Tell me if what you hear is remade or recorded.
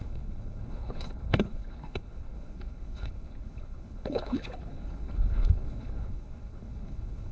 remade